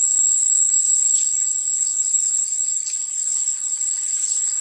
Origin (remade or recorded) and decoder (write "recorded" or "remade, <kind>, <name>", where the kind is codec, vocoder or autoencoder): recorded